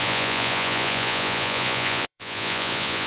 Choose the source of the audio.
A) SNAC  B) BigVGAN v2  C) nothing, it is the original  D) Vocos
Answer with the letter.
D